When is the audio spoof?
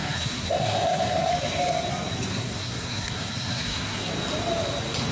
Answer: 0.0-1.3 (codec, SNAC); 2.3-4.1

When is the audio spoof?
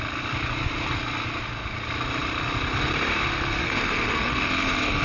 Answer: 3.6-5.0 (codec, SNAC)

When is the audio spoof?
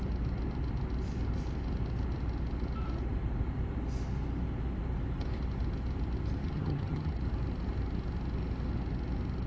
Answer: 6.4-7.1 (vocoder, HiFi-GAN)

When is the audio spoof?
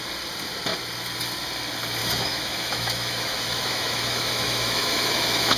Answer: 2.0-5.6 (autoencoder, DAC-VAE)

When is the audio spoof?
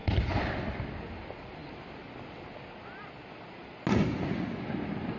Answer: none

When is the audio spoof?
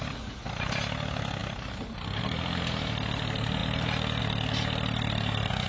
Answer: none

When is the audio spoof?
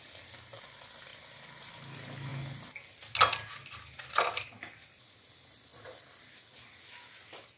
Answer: 5.7-6.2 (vocoder, BigVGAN v2)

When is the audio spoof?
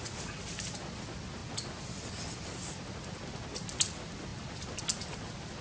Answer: none